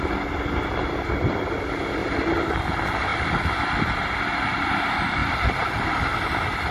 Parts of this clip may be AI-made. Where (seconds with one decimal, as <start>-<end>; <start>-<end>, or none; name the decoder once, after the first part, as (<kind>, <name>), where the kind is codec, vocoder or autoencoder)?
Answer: 2.0-2.5 (vocoder, BigVGAN v2); 3.1-4.7; 5.2-6.0